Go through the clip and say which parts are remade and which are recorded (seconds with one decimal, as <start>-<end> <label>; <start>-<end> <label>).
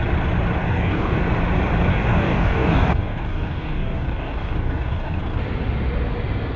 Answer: 0.0-0.6 recorded; 0.6-1.2 remade; 1.2-1.9 recorded; 1.9-5.2 remade; 5.2-6.6 recorded